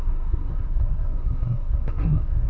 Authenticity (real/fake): fake